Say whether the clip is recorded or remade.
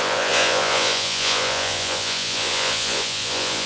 remade